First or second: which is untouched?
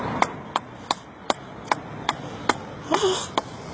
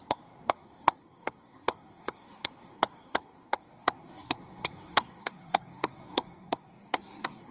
first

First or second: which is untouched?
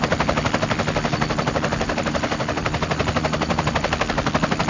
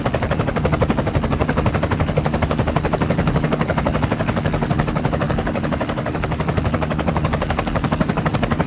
first